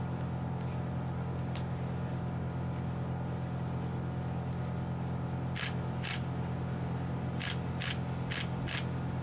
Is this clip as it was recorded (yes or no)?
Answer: yes